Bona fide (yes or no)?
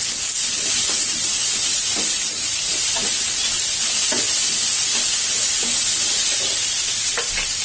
yes